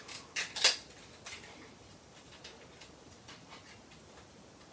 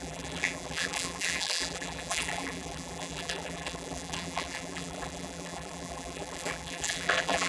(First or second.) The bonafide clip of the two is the first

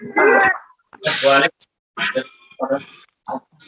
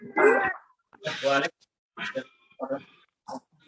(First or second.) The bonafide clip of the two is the first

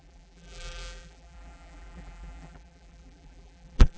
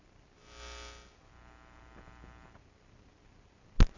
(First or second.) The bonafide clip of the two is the second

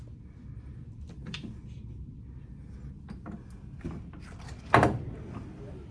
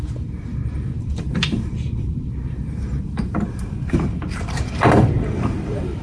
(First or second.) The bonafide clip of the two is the first